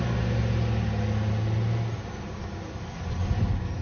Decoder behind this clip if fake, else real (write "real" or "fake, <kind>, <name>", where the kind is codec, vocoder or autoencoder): real